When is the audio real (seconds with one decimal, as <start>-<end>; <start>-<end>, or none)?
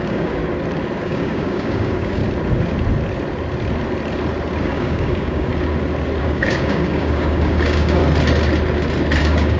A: 0.4-1.0; 2.2-4.6; 5.5-6.2; 8.0-9.2